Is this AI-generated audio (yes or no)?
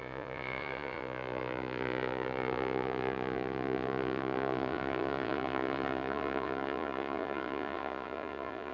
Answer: yes